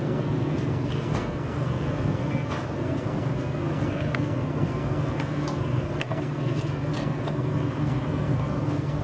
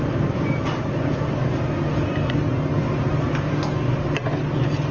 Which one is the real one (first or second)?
second